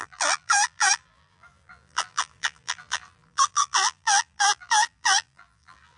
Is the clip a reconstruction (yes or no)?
yes